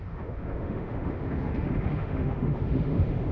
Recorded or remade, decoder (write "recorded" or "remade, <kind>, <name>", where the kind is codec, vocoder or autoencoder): remade, autoencoder, DAC-VAE